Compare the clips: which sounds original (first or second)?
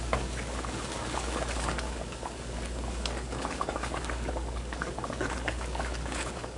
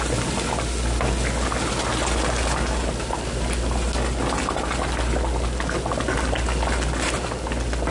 second